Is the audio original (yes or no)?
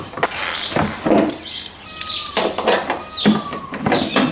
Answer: yes